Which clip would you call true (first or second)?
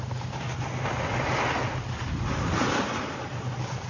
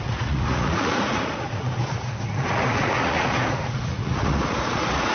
first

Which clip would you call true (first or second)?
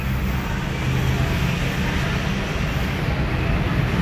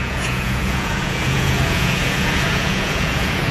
first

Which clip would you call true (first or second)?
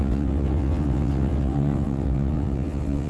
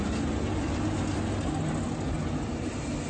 second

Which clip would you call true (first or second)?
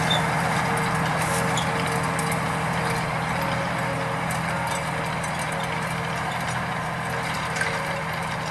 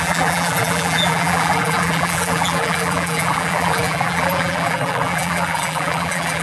first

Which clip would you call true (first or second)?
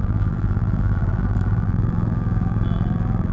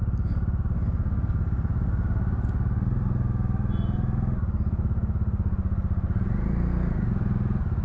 second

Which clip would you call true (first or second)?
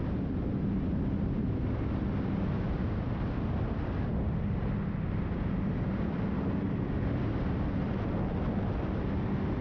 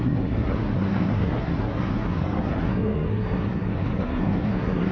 first